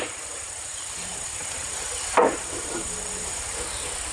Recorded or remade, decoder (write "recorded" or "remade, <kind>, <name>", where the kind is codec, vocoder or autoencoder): remade, vocoder, BigVGAN v2